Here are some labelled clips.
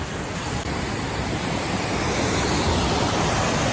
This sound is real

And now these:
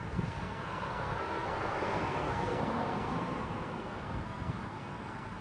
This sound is fake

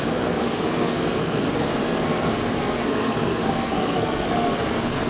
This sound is fake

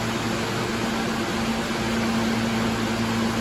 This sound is real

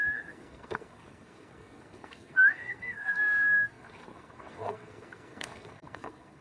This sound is fake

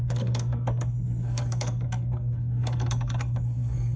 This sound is fake